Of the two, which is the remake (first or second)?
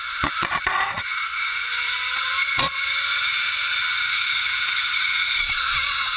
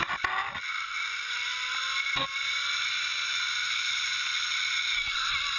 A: first